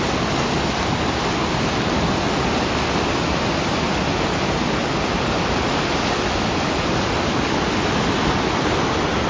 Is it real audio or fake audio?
real